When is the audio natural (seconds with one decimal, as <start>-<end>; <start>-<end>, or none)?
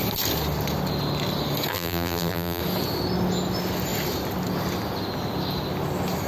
0.0-1.7; 2.6-6.3